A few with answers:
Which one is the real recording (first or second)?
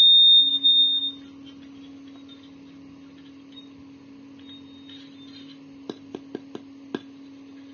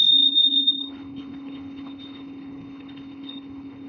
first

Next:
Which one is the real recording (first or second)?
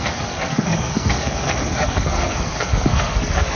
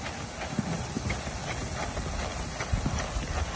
second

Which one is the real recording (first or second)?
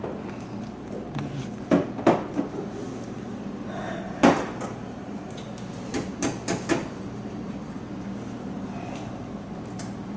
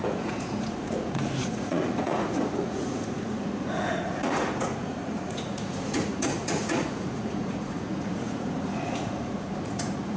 first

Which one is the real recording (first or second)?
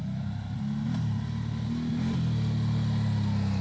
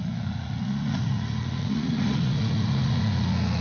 first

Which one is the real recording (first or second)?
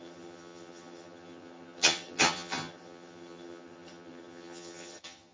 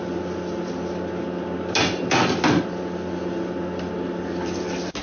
second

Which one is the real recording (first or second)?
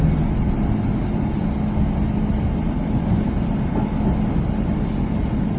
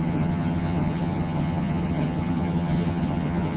first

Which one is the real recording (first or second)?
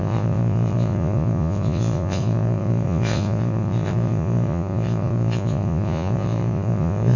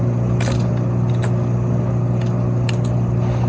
second